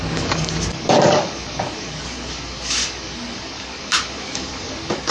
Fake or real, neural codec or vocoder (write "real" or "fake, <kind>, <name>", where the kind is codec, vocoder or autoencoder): fake, codec, DAC